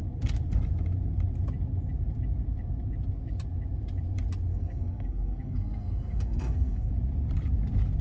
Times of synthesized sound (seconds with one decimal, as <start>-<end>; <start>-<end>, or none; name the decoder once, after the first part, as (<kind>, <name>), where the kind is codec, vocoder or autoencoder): 4.5-6.9 (codec, SNAC)